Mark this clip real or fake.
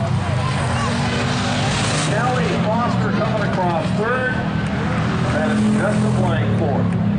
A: real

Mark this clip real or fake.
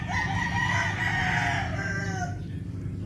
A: real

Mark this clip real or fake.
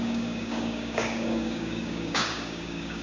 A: fake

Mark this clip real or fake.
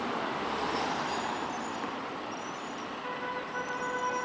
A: real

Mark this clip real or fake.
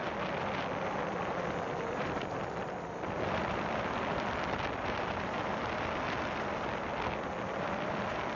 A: real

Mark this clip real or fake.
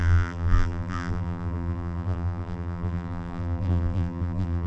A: fake